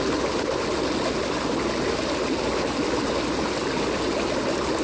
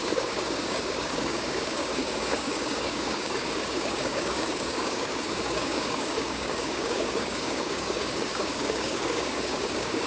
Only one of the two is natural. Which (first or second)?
first